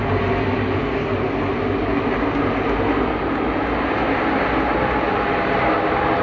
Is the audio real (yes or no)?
yes